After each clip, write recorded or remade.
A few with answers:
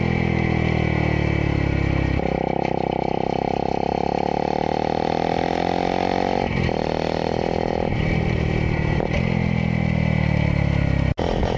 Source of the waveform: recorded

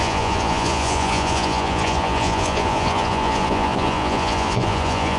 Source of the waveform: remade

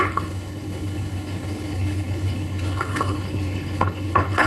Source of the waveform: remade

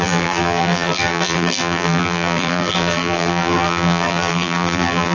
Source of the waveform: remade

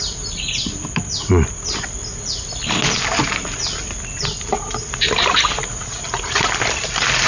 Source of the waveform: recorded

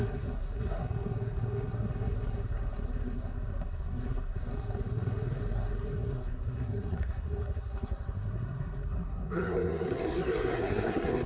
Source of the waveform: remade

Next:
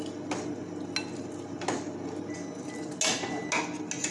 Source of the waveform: recorded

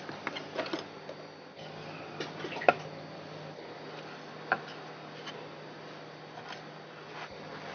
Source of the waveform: recorded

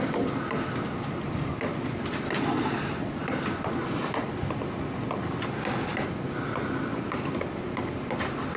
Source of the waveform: recorded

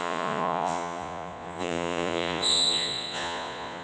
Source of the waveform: remade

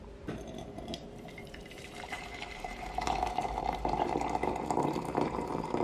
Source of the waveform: remade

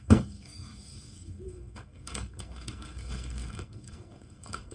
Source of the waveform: remade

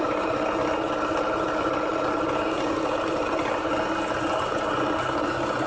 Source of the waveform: recorded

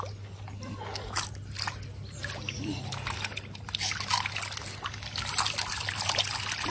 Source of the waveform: recorded